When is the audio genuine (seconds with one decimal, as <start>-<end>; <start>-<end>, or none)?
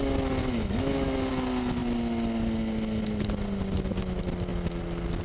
0.0-0.4; 1.3-5.2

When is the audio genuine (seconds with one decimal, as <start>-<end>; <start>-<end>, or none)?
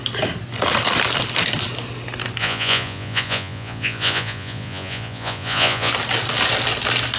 0.0-2.4; 5.9-7.2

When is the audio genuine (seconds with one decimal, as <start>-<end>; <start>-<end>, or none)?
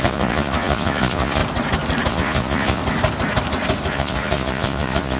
1.4-2.1; 2.8-3.9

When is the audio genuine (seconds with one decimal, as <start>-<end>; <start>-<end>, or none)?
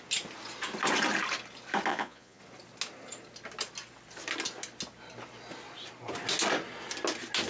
0.0-1.9; 2.4-7.5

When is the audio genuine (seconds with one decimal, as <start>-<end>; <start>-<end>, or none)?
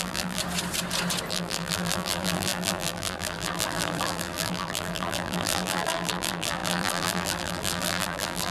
0.4-1.3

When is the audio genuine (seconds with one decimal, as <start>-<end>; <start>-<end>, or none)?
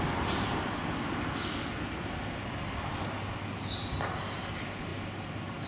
0.0-5.7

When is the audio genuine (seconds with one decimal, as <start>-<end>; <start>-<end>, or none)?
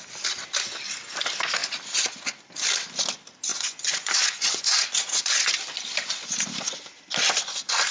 0.0-3.5; 5.5-7.9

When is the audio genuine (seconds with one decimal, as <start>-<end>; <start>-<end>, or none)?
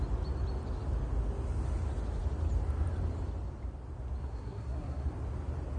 0.0-4.2; 5.1-5.8